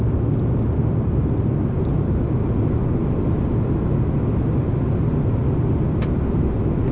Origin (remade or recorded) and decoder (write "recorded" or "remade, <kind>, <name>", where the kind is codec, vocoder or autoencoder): recorded